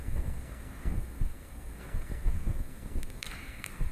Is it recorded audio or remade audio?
remade